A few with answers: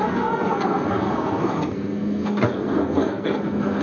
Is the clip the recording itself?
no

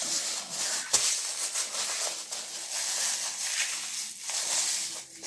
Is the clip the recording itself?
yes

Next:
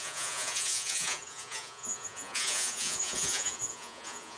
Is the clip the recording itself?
no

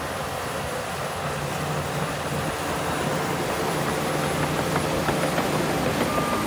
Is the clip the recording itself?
yes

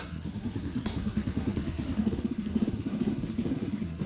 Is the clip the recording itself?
no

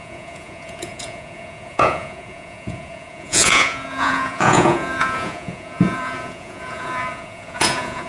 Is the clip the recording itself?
no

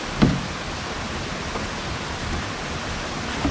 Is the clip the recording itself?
yes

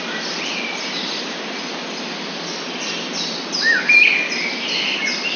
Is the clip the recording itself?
yes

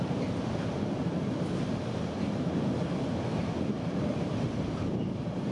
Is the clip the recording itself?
yes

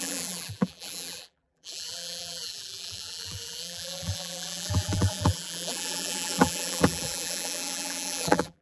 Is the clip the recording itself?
no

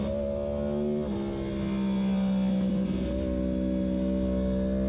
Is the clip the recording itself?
yes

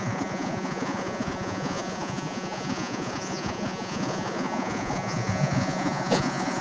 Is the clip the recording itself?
no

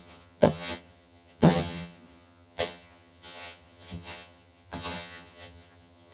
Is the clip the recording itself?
no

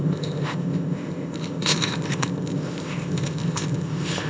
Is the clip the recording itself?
no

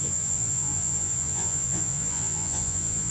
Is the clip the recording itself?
no